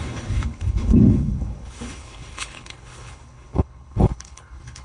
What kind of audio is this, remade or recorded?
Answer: remade